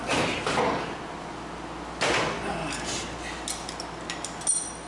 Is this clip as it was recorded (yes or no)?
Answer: yes